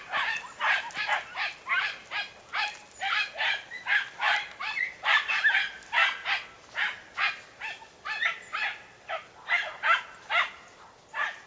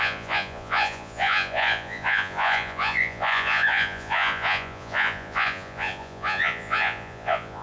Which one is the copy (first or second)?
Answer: second